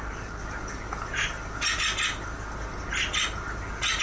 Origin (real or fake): real